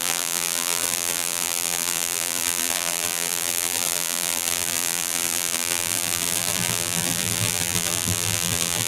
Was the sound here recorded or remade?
remade